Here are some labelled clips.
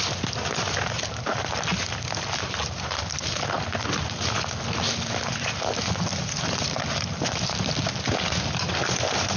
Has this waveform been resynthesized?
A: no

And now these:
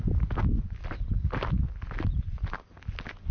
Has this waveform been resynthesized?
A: no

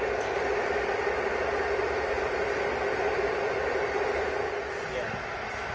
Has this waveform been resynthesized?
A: no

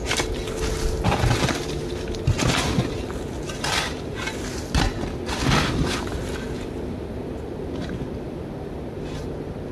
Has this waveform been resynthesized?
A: no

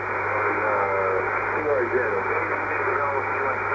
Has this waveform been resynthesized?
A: no